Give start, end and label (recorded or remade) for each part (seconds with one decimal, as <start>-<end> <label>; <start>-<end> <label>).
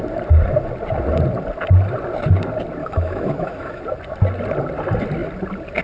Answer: 0.0-2.8 recorded; 2.8-3.8 remade; 3.8-5.8 recorded